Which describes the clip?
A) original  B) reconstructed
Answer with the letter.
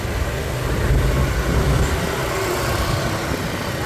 A